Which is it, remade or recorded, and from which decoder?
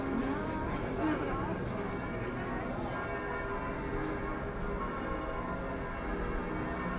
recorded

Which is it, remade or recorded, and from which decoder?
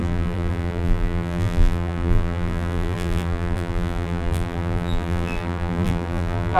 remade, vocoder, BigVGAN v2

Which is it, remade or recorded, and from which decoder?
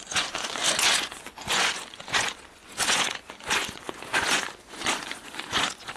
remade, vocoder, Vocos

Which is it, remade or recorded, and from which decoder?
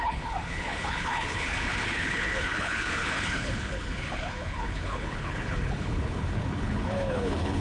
remade, codec, HILCodec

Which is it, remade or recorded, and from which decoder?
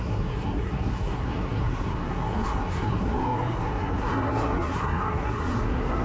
remade, codec, SNAC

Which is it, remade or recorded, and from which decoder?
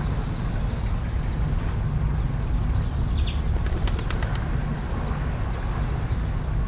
recorded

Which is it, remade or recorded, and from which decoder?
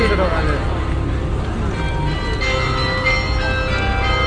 recorded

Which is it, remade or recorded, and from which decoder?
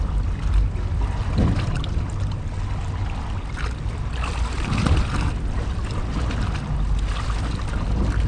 recorded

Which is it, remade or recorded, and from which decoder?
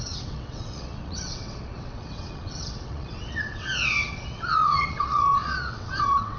remade, vocoder, WaveNeXt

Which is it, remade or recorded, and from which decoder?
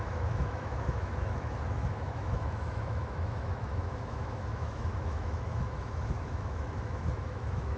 remade, autoencoder, DAC-VAE